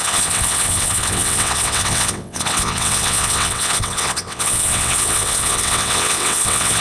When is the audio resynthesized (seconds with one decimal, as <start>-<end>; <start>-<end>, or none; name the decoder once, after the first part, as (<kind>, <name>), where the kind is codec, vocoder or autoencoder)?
0.0-6.8 (vocoder, WaveNeXt)